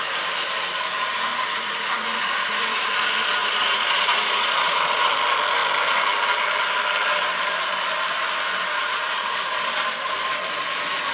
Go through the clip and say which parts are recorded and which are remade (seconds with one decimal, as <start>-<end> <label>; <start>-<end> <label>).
0.0-1.3 recorded; 1.3-2.9 remade; 2.9-3.4 recorded; 3.4-5.1 remade; 5.1-8.8 recorded; 8.8-9.4 remade; 9.4-11.1 recorded